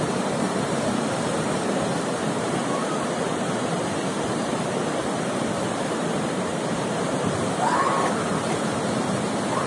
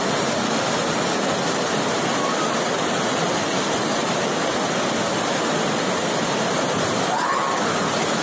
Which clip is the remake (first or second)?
first